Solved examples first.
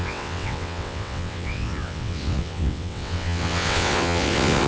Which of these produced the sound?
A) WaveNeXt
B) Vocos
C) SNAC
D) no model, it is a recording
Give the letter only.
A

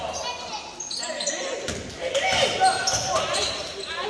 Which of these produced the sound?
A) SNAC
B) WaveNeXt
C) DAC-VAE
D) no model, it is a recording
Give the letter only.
D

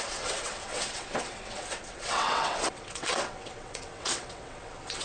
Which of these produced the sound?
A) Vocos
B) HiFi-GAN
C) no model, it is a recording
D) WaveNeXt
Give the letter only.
D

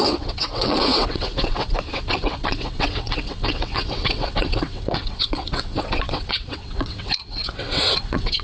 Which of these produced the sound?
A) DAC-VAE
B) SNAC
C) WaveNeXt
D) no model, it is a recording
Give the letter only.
C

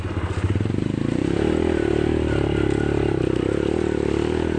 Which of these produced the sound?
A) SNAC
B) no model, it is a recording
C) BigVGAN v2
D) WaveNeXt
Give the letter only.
B